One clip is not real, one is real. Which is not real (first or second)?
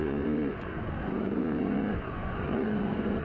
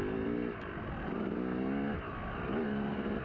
first